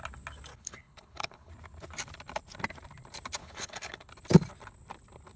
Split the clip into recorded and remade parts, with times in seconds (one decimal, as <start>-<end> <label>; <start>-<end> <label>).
0.0-0.5 recorded; 0.5-1.5 remade; 1.5-3.4 recorded; 3.4-4.1 remade; 4.1-5.4 recorded